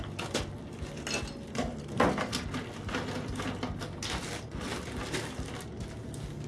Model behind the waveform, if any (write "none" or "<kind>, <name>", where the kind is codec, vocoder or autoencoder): none